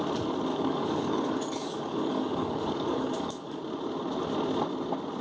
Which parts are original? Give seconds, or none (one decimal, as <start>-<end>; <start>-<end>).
0.0-0.5; 3.6-5.2